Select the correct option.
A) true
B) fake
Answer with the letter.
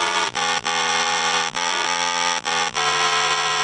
B